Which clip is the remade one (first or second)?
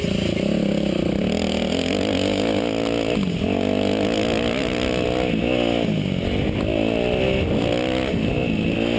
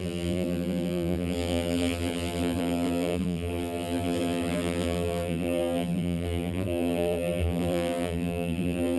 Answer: second